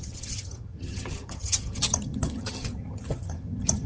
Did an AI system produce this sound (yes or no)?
yes